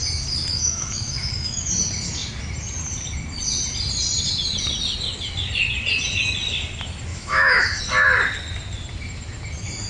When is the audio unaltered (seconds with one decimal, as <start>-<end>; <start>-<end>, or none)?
0.0-0.5; 1.7-7.1; 7.8-9.9